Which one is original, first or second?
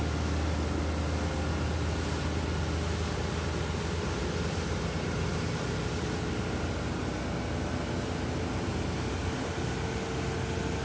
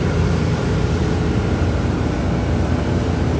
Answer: first